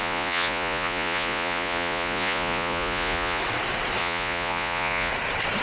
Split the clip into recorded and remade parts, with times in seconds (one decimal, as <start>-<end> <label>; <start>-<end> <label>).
0.0-3.4 remade; 3.4-4.0 recorded; 4.0-5.1 remade; 5.1-5.6 recorded